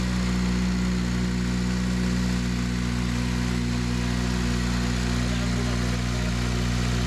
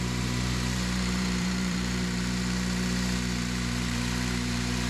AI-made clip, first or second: second